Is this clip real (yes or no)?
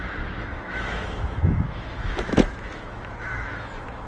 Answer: no